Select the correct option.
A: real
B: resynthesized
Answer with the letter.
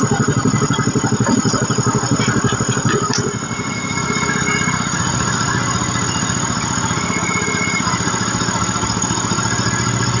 A